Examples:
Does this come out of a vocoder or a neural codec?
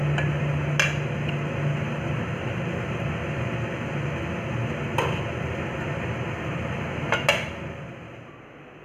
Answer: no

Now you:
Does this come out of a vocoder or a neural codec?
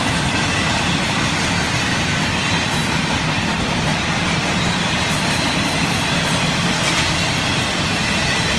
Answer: yes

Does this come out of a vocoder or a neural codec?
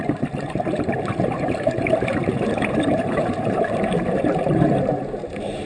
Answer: yes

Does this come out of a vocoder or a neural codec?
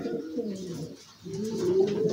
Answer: no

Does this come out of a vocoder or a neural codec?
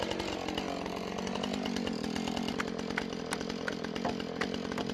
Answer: no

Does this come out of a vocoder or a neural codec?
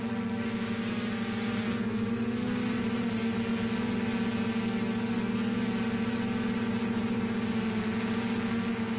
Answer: no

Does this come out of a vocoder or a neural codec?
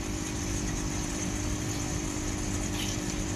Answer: yes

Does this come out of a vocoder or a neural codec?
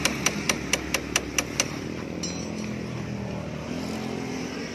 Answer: no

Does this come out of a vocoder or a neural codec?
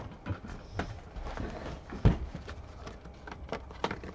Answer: no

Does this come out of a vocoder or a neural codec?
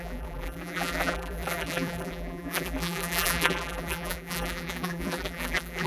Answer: yes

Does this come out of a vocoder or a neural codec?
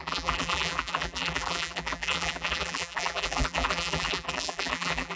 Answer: yes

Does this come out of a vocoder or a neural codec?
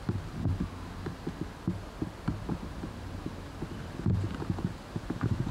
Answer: no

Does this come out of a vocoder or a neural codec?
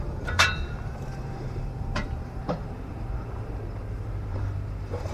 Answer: yes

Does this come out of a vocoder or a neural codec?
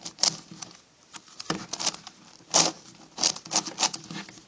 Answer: yes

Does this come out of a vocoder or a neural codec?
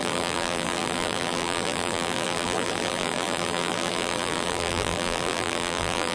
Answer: yes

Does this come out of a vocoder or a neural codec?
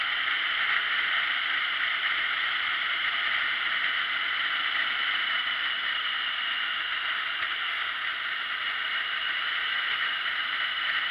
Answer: no